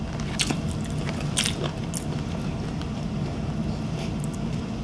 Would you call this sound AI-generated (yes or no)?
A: no